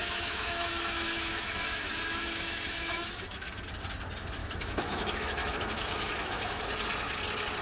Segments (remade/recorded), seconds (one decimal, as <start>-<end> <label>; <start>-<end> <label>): 0.0-3.5 remade; 3.5-4.4 recorded; 4.4-6.6 remade; 6.6-7.6 recorded